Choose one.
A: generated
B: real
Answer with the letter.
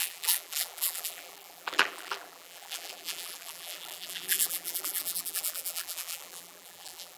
A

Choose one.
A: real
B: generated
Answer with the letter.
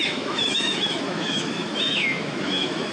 B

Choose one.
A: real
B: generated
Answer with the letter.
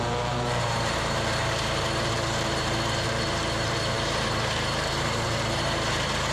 B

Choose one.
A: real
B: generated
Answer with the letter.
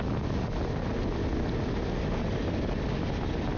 A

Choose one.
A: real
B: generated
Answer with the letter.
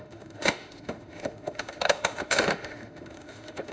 B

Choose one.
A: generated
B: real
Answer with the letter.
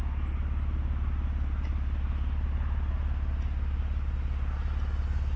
B